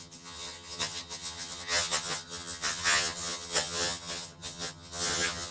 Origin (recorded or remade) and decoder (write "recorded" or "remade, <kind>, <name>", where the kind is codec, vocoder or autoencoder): remade, vocoder, HiFi-GAN